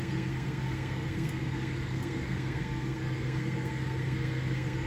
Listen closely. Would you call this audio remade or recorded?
remade